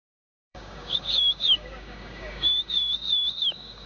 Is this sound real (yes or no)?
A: no